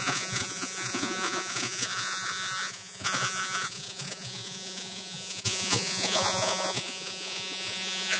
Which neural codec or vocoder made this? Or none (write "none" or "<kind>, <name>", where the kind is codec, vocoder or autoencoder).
vocoder, Vocos